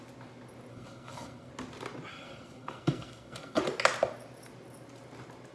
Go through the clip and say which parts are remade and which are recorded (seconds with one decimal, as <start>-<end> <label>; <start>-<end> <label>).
0.0-0.7 recorded; 0.7-1.5 remade; 1.5-2.1 recorded; 2.1-3.6 remade; 3.6-5.5 recorded